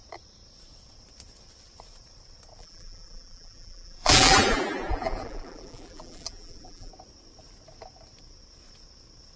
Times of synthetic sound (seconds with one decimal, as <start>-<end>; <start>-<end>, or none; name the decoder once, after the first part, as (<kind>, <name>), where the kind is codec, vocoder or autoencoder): 2.6-6.9 (vocoder, BigVGAN v2)